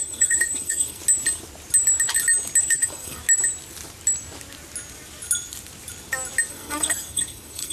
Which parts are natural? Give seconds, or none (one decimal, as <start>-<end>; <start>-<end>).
1.0-2.6; 3.2-6.5